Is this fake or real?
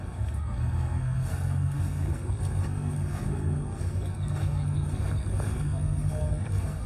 fake